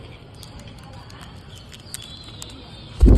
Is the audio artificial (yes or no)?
no